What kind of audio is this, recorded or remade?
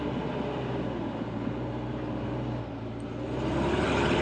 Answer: recorded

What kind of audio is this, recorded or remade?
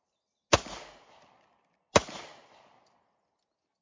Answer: recorded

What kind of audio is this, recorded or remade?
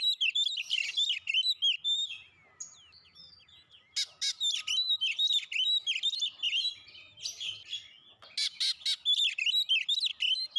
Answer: recorded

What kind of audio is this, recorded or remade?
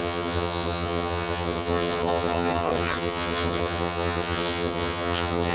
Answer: remade